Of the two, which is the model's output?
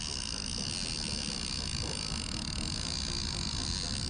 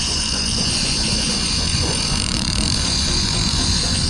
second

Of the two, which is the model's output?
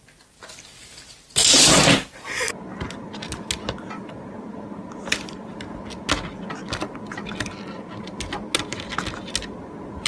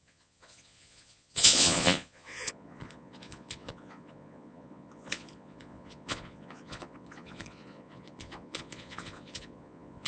second